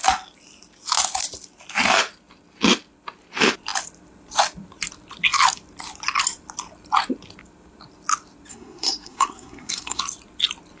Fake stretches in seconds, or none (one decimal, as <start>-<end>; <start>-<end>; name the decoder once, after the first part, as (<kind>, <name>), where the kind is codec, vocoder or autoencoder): 8.5-10.0 (codec, SNAC)